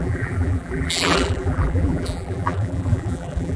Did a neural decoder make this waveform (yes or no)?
yes